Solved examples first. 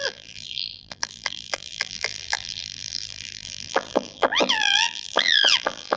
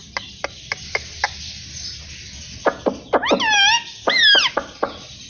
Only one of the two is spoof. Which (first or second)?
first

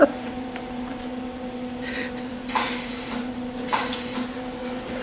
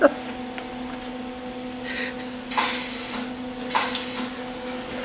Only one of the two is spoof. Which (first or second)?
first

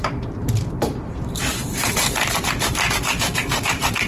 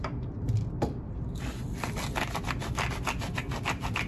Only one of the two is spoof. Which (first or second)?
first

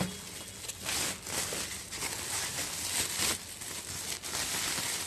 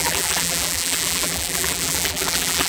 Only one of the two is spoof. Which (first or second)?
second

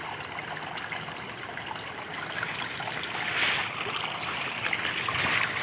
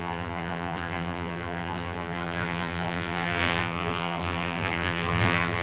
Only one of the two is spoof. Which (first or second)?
second